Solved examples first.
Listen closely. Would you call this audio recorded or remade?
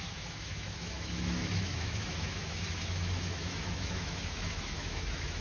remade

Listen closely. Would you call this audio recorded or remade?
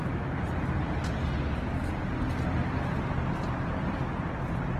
recorded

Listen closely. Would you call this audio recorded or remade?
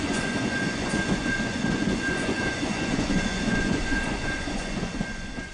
remade